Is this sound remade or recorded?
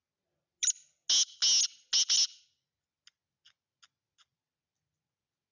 recorded